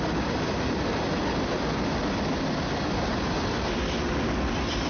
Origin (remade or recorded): recorded